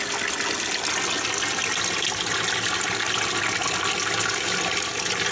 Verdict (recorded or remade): recorded